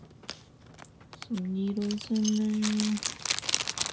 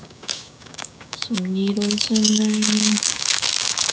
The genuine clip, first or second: first